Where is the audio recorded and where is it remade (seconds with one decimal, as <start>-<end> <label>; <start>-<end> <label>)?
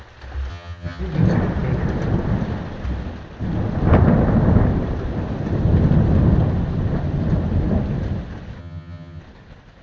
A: 0.0-0.5 recorded; 0.5-1.0 remade; 1.0-8.6 recorded; 8.6-9.2 remade; 9.2-9.8 recorded